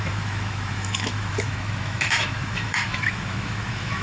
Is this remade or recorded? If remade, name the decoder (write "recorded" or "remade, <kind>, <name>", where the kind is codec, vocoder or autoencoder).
remade, autoencoder, DAC-VAE